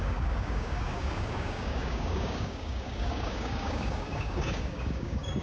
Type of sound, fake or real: fake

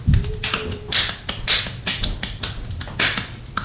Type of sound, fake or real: real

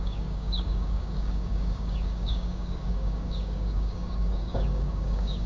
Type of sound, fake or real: fake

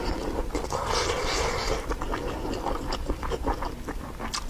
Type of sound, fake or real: real